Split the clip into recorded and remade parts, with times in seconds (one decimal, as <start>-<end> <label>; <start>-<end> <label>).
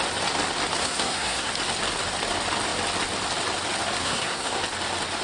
0.0-0.8 recorded; 0.8-1.5 remade; 1.5-4.0 recorded; 4.0-4.6 remade; 4.6-5.2 recorded